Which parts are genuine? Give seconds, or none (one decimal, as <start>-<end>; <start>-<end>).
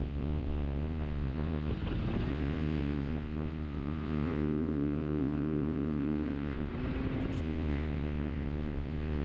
1.7-2.3; 6.7-7.4